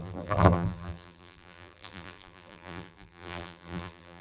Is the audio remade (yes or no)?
yes